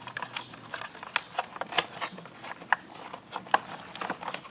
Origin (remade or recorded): recorded